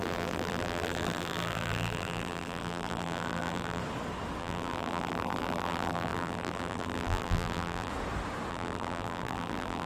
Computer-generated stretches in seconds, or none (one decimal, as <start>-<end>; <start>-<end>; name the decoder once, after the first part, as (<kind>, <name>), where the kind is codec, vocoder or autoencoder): 0.0-3.8 (vocoder, BigVGAN v2); 4.4-7.9; 8.5-9.9